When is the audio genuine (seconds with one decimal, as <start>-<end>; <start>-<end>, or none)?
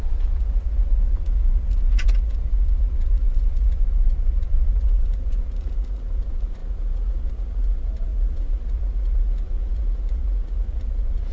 none